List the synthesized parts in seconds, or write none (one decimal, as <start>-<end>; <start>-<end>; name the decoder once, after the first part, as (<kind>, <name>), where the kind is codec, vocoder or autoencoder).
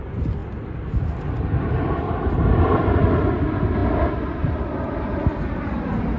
none